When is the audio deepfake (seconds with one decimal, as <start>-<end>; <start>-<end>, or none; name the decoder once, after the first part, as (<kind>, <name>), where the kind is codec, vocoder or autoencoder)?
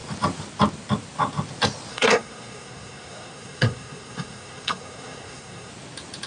1.9-5.7 (codec, SNAC)